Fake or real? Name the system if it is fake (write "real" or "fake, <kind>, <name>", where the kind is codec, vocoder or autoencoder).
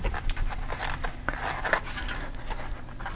real